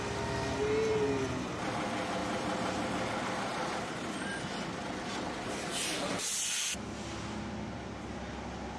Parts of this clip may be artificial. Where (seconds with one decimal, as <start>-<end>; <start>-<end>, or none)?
2.2-3.1

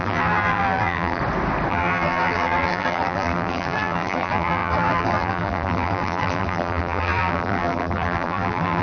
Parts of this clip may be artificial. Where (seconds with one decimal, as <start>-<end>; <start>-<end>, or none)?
0.0-1.2; 1.7-8.8

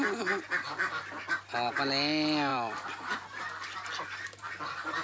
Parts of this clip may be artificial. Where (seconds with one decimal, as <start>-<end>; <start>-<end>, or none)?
2.5-3.1

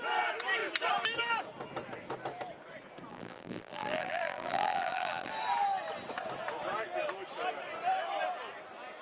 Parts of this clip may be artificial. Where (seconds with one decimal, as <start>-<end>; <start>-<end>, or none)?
3.1-5.3

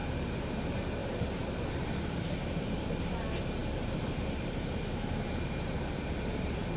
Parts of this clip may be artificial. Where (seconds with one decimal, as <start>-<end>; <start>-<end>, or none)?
0.0-0.6; 1.0-2.9; 3.6-6.8

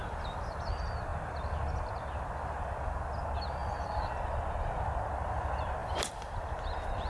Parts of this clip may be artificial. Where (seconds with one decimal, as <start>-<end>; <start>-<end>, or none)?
0.0-0.6; 3.6-4.1; 5.8-6.6

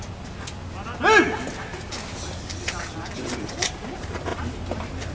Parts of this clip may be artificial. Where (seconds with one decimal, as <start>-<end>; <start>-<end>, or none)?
1.7-3.4; 4.3-5.1